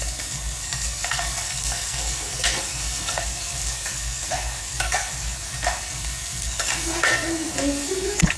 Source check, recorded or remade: remade